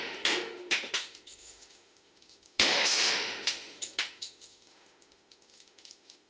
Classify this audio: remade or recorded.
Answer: remade